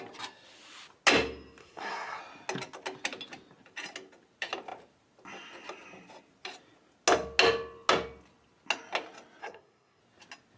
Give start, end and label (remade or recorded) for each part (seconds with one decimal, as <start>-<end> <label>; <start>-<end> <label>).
0.0-1.6 recorded; 1.6-2.2 remade; 2.2-9.4 recorded; 9.4-10.0 remade; 10.0-10.6 recorded